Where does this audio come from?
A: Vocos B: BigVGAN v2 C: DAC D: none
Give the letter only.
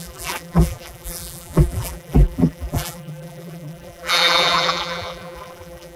B